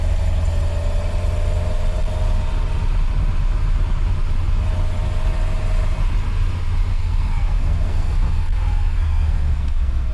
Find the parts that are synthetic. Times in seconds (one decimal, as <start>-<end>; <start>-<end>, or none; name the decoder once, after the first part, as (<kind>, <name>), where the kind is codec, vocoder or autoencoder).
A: 6.9-10.1 (codec, SNAC)